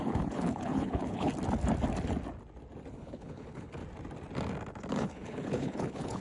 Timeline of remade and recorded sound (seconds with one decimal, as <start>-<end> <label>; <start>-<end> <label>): 0.0-1.3 remade; 1.3-2.9 recorded; 2.9-3.8 remade; 3.8-4.9 recorded; 4.9-6.2 remade

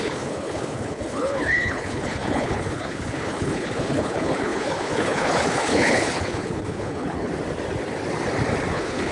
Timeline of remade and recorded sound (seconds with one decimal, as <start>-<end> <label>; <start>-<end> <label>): 0.0-7.3 remade; 7.3-8.7 recorded; 8.7-9.1 remade